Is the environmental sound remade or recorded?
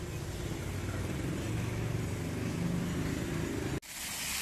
recorded